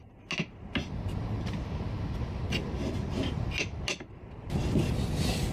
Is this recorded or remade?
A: recorded